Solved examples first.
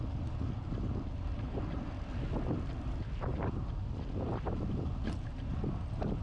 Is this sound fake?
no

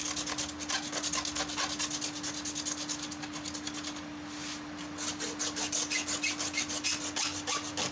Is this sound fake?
no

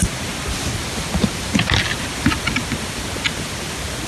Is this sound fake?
no